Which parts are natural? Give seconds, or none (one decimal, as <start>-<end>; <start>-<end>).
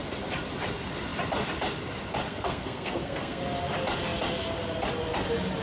0.0-2.3; 3.4-5.6